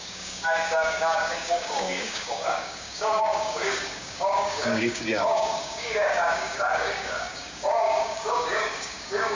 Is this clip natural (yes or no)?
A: no